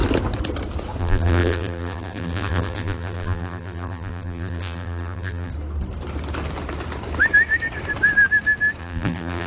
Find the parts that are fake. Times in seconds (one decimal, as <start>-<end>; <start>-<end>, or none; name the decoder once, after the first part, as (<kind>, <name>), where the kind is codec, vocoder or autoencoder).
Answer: 1.0-5.5 (vocoder, BigVGAN v2); 8.8-9.5